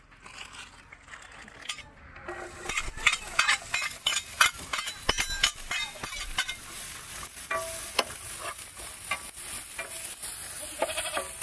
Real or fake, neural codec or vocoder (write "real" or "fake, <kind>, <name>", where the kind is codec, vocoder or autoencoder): real